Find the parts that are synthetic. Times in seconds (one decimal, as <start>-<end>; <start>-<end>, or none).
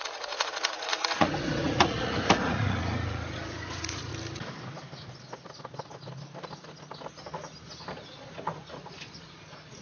0.0-4.1; 8.1-9.8